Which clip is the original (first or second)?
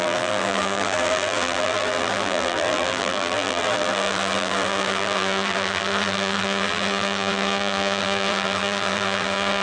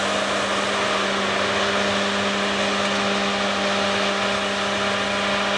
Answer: second